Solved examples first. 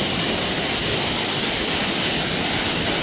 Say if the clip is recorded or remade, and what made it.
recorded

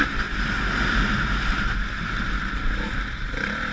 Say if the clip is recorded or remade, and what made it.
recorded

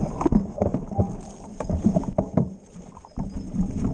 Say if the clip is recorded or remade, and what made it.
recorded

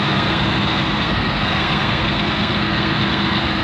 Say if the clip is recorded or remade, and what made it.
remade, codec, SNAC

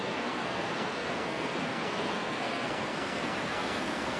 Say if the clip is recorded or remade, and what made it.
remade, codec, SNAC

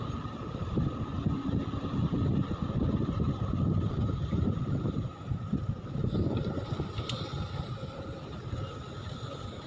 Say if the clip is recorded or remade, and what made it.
recorded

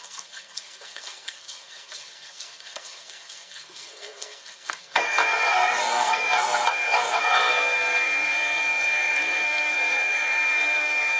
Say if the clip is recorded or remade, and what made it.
remade, codec, SNAC